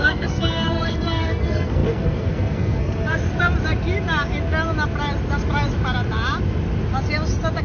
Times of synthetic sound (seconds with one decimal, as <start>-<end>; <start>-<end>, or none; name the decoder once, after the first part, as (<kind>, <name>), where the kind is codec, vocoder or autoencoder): 0.0-3.2 (codec, SNAC)